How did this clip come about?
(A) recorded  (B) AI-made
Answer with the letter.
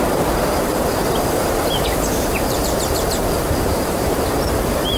B